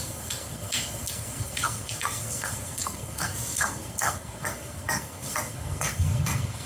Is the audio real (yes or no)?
no